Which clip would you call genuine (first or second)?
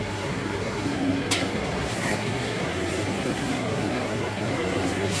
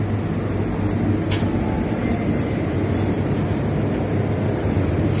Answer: second